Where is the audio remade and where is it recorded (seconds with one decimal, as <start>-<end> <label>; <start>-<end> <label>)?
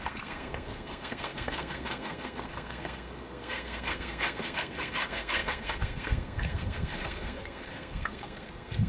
0.0-8.9 remade